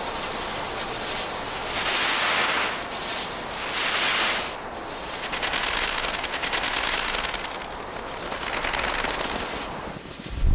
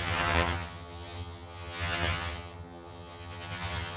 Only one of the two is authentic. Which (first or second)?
first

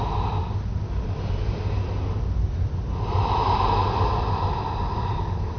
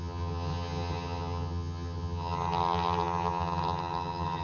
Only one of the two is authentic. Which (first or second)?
first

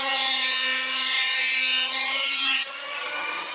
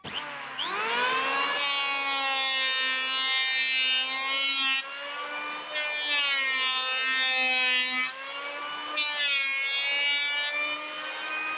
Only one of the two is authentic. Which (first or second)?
second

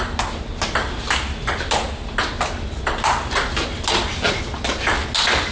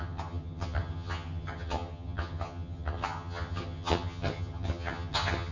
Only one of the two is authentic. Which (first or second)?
first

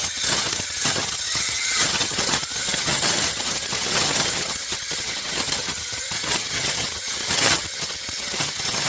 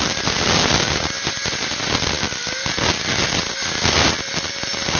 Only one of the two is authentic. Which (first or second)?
second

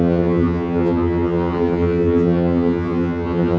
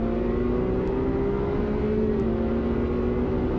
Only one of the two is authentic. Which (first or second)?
second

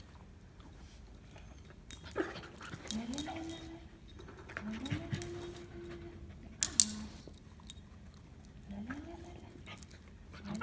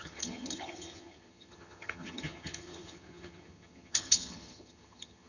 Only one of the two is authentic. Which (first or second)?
first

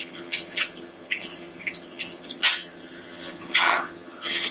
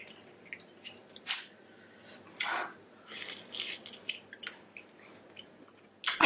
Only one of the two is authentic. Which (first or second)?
second